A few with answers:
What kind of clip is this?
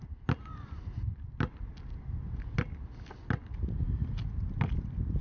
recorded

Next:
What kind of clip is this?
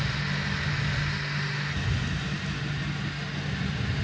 recorded